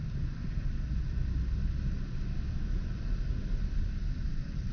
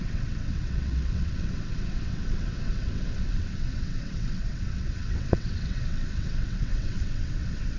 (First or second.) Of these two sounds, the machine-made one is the second